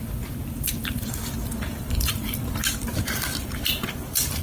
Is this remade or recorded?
remade